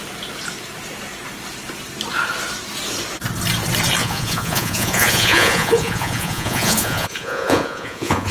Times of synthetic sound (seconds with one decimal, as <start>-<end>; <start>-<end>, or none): 4.0-8.3